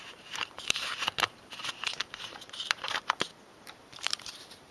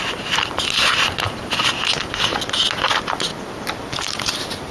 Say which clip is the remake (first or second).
first